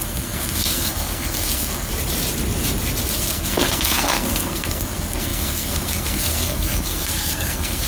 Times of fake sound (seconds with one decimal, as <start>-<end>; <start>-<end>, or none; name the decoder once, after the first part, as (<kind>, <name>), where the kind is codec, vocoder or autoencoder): 0.0-1.9 (codec, SNAC); 3.1-7.9